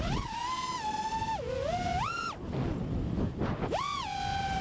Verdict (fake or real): real